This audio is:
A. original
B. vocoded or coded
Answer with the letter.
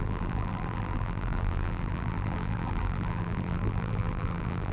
B